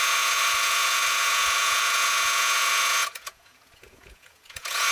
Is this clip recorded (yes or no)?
no